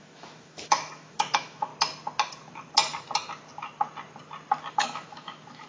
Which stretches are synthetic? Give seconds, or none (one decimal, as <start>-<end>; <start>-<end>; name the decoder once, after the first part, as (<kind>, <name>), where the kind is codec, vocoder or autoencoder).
0.0-1.7 (autoencoder, DAC-VAE); 4.7-5.7